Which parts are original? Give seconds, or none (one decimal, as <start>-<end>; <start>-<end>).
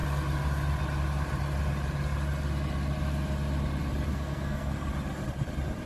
0.0-4.1; 4.7-5.9